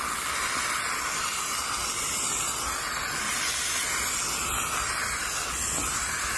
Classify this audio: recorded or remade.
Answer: recorded